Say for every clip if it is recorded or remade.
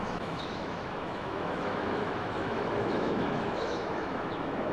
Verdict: remade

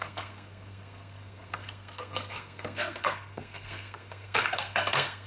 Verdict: remade